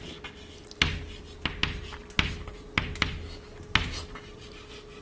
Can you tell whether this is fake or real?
real